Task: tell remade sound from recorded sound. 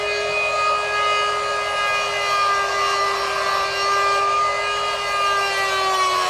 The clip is recorded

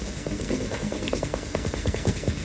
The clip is remade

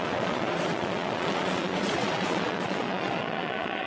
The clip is remade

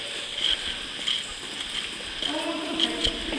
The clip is recorded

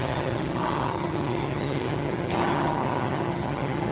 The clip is remade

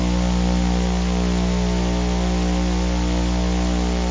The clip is recorded